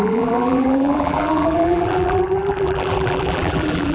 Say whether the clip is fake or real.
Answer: fake